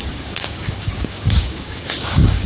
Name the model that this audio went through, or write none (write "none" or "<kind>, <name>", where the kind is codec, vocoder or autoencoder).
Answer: codec, DAC